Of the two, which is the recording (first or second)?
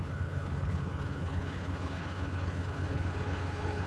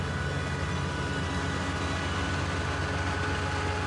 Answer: second